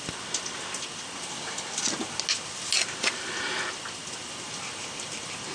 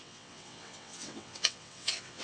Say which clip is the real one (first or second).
first